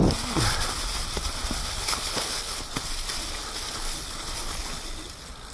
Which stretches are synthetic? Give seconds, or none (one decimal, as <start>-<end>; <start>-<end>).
1.6-2.7